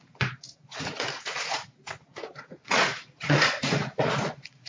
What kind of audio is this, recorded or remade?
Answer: remade